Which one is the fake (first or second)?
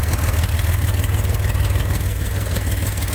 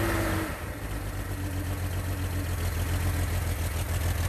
first